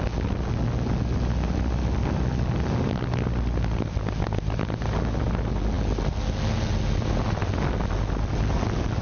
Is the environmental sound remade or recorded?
recorded